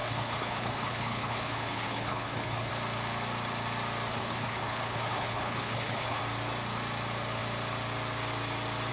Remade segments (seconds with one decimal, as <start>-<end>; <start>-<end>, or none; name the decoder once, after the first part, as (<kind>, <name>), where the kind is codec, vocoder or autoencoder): 0.0-2.7 (codec, HILCodec); 4.1-6.2

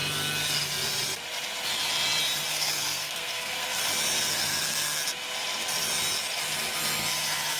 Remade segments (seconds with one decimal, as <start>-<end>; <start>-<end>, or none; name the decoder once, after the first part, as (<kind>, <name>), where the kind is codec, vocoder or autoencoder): 2.5-3.8 (codec, SNAC); 4.3-5.0